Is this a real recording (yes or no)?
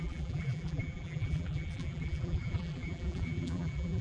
no